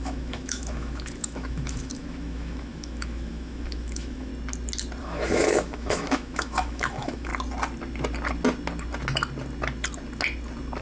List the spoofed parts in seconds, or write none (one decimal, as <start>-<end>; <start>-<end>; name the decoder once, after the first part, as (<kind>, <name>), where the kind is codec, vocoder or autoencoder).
0.0-4.3 (autoencoder, DAC-VAE); 5.0-7.3